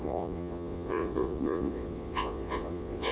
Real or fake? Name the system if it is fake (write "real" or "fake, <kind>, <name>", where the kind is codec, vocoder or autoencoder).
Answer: fake, vocoder, Vocos